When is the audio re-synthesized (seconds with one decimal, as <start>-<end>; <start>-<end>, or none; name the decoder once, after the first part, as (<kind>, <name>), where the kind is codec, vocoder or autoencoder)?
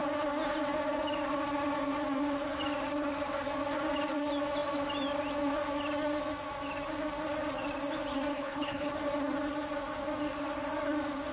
8.3-8.9 (codec, HILCodec)